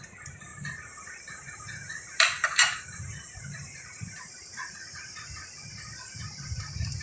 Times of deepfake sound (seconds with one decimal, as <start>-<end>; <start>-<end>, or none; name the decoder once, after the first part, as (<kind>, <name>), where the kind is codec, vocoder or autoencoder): 0.5-4.7 (vocoder, BigVGAN v2)